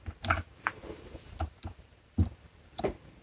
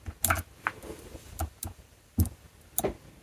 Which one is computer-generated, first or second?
first